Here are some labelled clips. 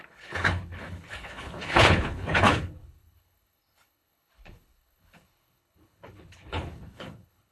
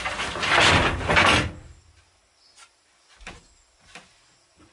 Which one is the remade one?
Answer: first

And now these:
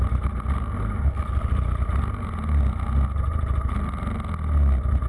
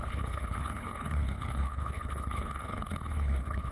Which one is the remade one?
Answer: second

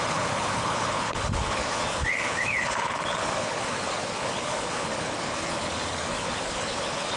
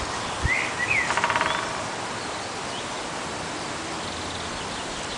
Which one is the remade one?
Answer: first